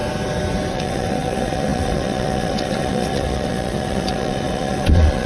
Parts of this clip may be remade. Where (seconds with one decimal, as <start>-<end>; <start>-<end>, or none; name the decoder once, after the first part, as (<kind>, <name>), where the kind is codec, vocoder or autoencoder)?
0.7-5.3 (vocoder, WaveNeXt)